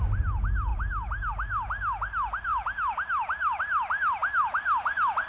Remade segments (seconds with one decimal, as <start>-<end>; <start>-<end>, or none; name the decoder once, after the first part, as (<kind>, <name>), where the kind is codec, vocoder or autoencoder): none